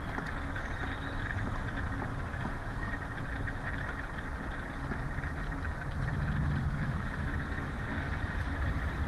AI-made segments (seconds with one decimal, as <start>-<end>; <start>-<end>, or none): 2.3-2.9; 6.6-8.1